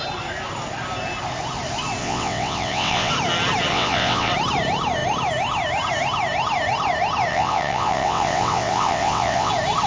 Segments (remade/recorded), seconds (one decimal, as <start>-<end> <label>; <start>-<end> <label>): 0.0-2.0 recorded; 2.0-3.1 remade; 3.1-3.7 recorded; 3.7-4.3 remade; 4.3-7.3 recorded; 7.3-9.5 remade; 9.5-9.9 recorded